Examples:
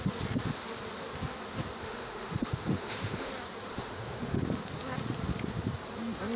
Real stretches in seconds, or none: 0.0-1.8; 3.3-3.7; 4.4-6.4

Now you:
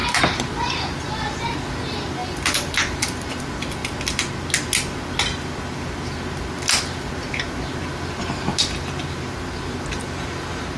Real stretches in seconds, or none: 1.6-2.2; 3.4-10.8

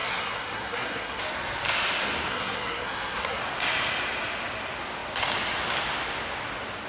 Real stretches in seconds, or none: 1.2-2.3; 3.4-6.9

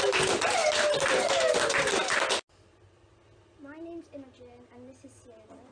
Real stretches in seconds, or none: 0.0-5.7

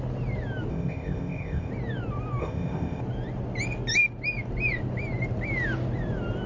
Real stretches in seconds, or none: 0.0-0.7; 1.7-2.4; 3.0-6.5

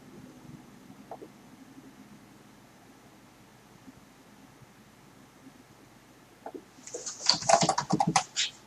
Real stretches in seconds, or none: 0.0-8.7

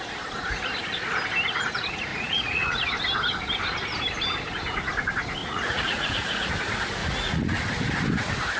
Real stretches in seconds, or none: 0.0-2.1; 2.8-5.4; 6.5-7.0; 7.6-8.6

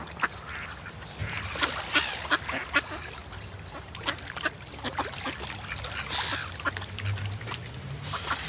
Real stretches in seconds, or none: 0.0-8.5